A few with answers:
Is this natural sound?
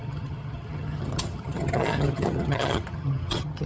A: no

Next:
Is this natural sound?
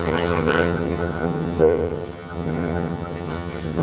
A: no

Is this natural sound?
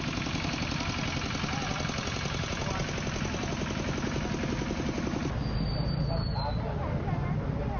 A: yes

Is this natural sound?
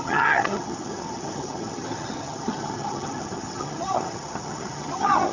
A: no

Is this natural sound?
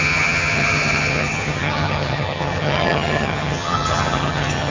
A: no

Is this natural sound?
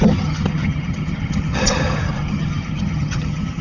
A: no